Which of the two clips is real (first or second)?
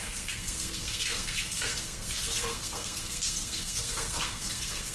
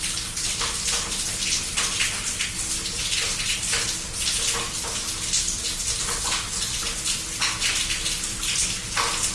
second